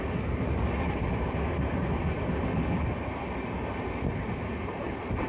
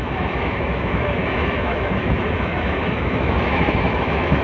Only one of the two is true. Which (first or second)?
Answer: first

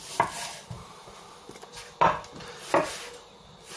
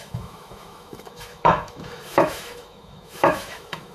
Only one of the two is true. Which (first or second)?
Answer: first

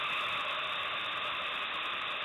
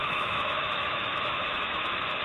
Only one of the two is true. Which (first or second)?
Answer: first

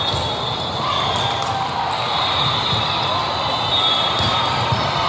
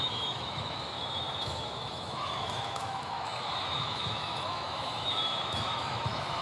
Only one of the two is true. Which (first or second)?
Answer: first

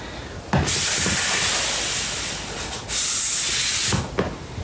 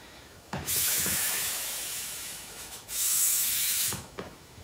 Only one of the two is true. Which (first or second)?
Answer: first